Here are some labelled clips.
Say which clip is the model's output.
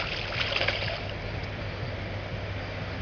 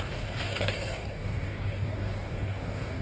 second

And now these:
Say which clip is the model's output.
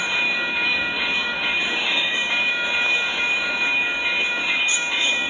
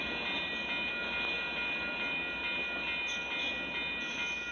first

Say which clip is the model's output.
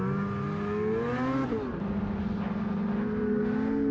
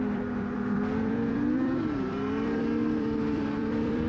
second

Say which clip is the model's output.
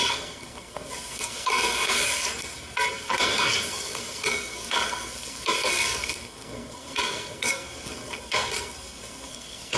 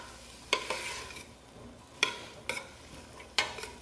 first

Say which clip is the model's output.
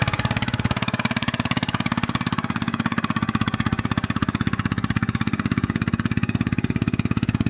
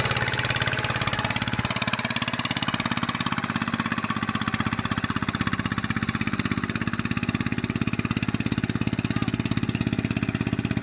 first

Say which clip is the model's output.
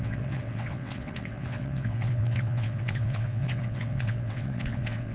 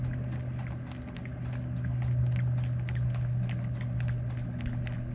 first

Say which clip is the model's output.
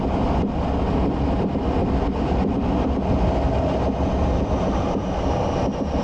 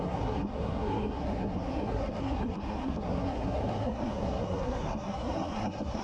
second